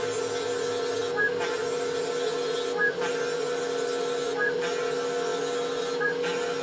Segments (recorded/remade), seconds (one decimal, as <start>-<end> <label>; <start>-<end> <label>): 0.0-6.6 recorded